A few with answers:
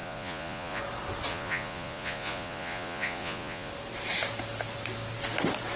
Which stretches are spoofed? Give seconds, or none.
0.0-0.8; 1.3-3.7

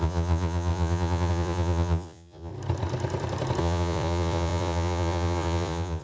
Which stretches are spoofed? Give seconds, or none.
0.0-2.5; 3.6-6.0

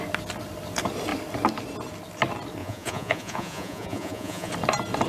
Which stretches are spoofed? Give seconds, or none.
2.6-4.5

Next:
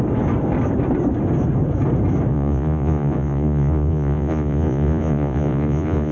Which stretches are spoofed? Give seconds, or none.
2.3-6.1

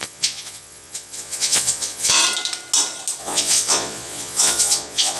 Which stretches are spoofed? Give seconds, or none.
0.0-2.2; 3.2-5.2

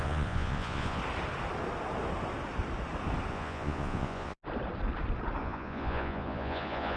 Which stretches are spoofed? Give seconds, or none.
0.0-1.0; 3.3-4.4; 5.4-7.0

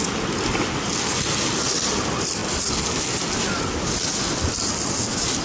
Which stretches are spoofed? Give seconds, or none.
none

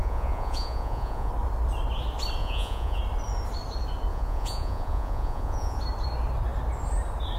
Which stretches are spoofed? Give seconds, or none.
0.0-1.3; 2.4-3.0; 4.1-5.8